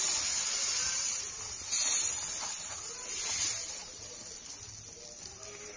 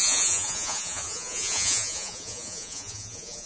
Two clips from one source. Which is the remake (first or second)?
second